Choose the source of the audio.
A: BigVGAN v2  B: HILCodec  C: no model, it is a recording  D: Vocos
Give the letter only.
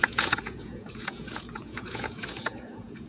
D